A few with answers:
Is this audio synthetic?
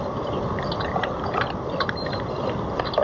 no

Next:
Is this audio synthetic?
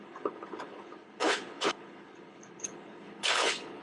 yes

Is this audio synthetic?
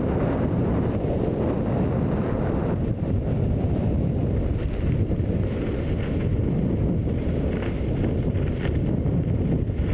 no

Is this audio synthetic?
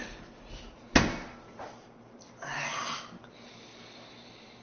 no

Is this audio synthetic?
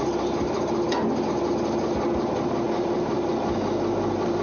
no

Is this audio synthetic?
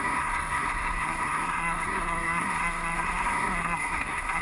yes